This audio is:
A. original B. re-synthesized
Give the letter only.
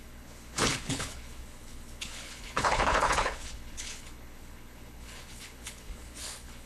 B